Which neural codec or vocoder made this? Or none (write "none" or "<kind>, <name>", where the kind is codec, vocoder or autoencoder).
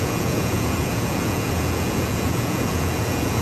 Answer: vocoder, Vocos